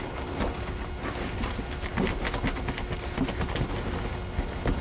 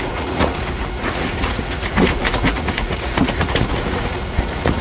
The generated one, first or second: second